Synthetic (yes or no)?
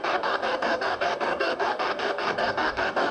yes